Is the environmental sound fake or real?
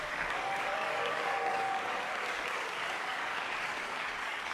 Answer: fake